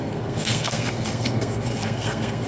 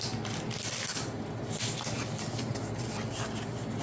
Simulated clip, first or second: first